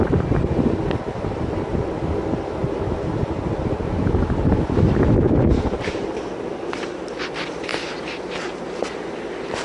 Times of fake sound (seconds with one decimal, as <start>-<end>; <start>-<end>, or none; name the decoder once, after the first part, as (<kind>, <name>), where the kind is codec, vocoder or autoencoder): none

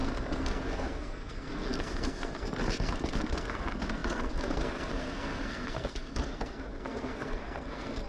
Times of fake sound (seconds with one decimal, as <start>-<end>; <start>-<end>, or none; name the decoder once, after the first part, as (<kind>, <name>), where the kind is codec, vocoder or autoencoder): 0.0-8.1 (codec, SNAC)

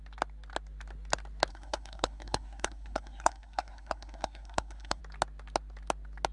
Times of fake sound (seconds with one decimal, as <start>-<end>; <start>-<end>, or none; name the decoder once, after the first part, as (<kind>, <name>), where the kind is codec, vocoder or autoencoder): 1.5-5.0 (codec, SNAC)